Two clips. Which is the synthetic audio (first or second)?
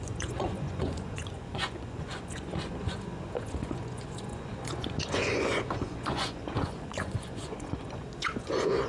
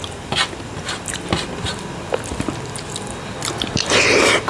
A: first